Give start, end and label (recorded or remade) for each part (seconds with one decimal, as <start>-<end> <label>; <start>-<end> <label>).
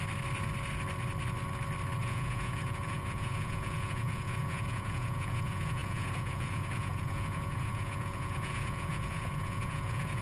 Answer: 0.0-2.0 recorded; 2.0-10.2 remade